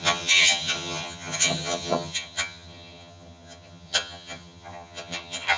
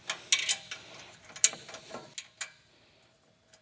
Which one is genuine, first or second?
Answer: second